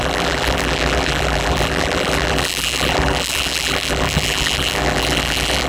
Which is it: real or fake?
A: fake